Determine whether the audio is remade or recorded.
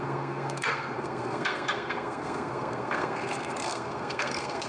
remade